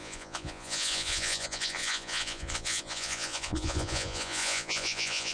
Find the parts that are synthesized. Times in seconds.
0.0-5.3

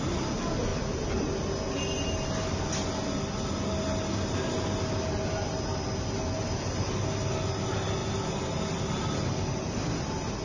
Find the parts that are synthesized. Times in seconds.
none

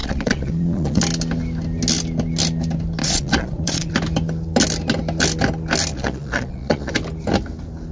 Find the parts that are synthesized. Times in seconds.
0.0-1.0; 3.0-3.9; 5.9-6.9

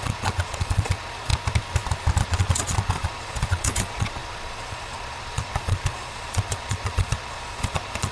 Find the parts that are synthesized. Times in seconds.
0.0-1.3; 2.2-8.1

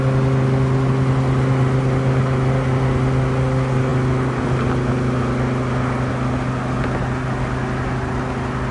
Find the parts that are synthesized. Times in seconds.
none

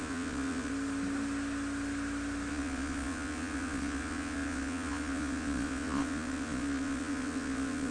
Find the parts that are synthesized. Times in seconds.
0.0-0.7; 2.5-7.9